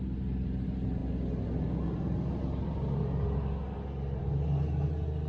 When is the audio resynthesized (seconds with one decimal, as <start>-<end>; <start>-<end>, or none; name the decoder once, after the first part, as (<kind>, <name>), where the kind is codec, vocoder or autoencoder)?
none